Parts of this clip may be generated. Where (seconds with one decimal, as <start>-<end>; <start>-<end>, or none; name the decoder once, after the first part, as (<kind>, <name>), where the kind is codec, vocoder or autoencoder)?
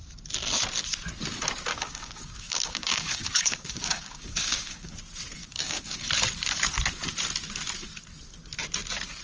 1.7-4.9 (codec, DAC); 5.4-6.0